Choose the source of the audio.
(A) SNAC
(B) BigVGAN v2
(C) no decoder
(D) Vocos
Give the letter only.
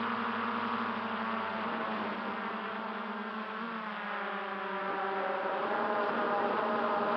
C